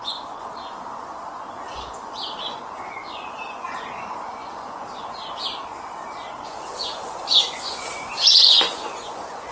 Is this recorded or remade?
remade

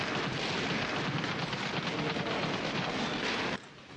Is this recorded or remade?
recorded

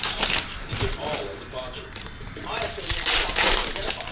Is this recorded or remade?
remade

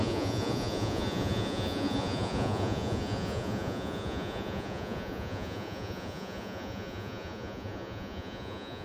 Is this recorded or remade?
remade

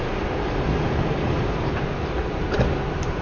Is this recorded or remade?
remade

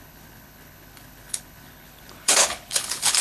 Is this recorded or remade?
remade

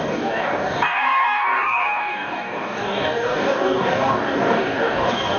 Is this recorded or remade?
remade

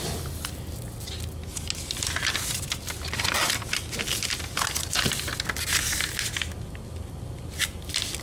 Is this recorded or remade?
recorded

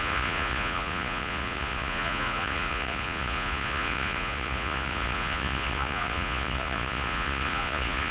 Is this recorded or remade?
remade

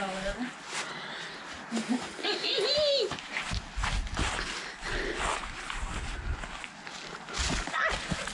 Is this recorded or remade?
recorded